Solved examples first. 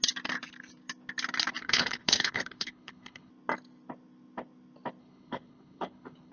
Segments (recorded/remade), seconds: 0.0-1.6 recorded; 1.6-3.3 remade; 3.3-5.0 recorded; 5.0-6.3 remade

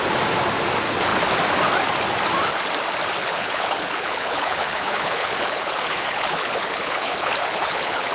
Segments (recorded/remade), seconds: 0.0-3.2 recorded; 3.2-8.1 remade

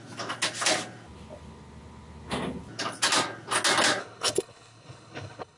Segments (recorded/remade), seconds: 0.0-4.0 recorded; 4.0-5.6 remade

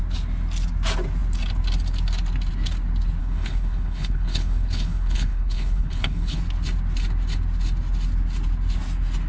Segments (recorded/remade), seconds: 0.0-3.2 recorded; 3.2-6.4 remade; 6.4-9.3 recorded

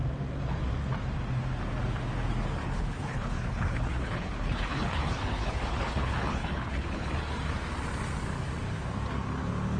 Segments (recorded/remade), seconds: 0.0-2.6 recorded; 2.6-7.2 remade; 7.2-9.8 recorded